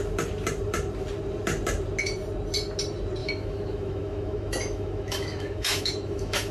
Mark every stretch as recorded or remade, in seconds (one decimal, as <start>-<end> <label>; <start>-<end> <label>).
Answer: 0.0-3.2 recorded; 3.2-6.5 remade